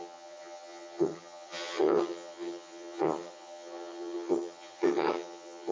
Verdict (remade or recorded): remade